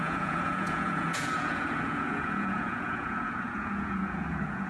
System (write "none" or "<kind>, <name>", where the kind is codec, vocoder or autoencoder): vocoder, Vocos